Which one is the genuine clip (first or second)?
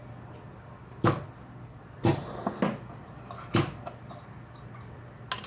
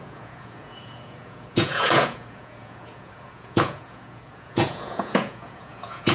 first